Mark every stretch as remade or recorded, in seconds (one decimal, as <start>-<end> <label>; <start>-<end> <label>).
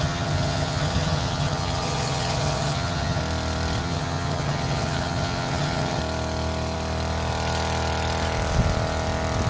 0.0-3.2 remade; 3.2-3.8 recorded; 3.8-6.0 remade; 6.0-9.5 recorded